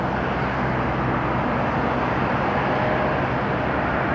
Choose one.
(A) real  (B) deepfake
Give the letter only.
A